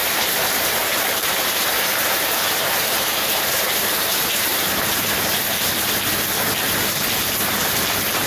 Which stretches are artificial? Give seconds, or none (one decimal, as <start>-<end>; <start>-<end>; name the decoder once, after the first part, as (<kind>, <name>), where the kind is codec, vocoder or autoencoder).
0.0-5.0 (vocoder, BigVGAN v2)